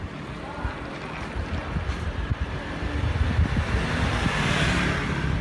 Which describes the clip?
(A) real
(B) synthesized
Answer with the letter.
A